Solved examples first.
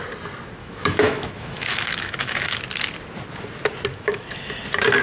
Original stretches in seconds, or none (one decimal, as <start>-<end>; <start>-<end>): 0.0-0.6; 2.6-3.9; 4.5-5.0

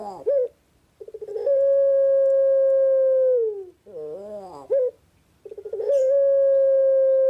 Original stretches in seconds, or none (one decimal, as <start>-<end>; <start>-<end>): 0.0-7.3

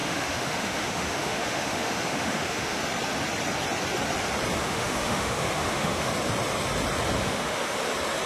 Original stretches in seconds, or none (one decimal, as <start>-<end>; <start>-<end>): 2.8-4.6; 6.1-7.2; 7.8-8.3

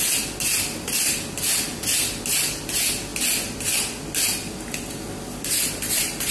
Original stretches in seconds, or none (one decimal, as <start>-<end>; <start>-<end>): 0.0-6.3

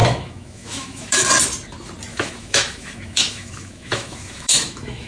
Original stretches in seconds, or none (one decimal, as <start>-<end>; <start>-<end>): 1.3-2.1

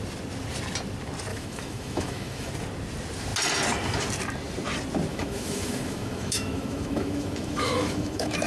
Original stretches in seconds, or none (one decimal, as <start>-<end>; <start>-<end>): 0.0-1.3; 2.5-5.1

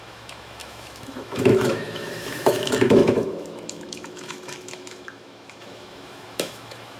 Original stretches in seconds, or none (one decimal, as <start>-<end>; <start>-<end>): none